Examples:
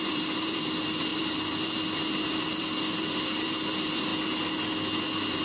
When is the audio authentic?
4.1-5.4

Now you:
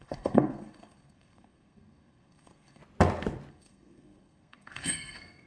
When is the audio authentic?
2.8-3.5

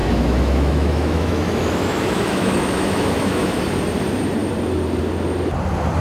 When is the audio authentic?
3.6-6.0

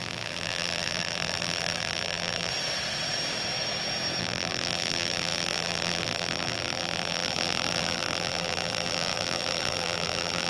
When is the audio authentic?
2.5-4.2

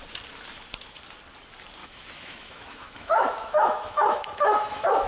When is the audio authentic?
0.0-1.8

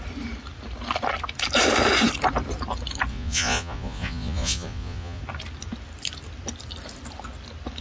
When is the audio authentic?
0.0-3.1; 5.2-7.8

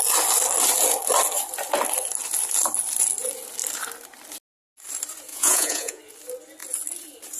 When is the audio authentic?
0.0-5.3; 6.0-7.4

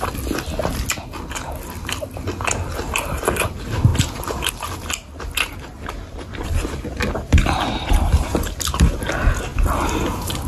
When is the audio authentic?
0.0-10.5